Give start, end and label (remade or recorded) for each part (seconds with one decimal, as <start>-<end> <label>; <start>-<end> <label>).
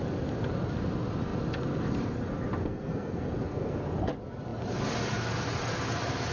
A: 0.0-2.6 recorded; 2.6-3.8 remade; 3.8-6.3 recorded